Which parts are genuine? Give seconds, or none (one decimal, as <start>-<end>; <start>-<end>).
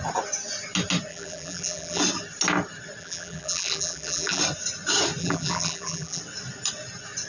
0.0-1.1; 2.0-3.0; 4.4-5.2; 6.2-7.3